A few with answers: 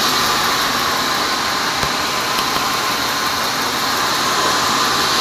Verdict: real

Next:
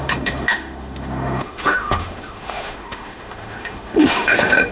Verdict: fake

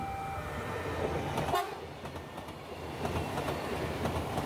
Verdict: real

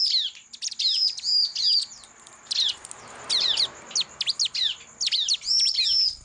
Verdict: real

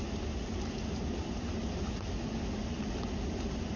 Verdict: real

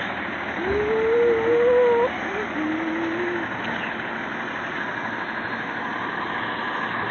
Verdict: real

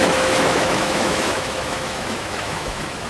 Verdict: fake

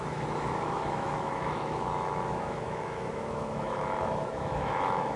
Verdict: fake